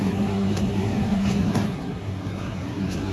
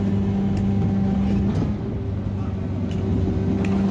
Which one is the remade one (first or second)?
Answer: first